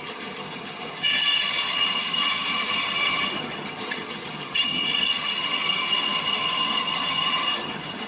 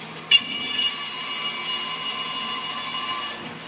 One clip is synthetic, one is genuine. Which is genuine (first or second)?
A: second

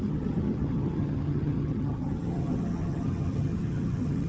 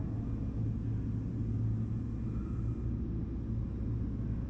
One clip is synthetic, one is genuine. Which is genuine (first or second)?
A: second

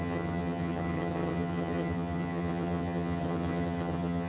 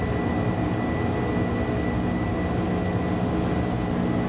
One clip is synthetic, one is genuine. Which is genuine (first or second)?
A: second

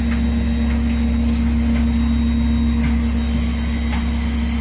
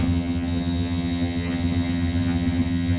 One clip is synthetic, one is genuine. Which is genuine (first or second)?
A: first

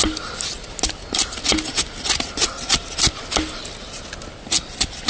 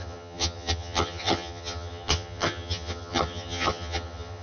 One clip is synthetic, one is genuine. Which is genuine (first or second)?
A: first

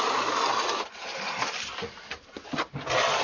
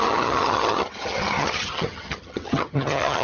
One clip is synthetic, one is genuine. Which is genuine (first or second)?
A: first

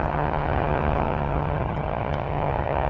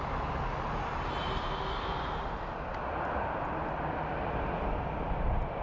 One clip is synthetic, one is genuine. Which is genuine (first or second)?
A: second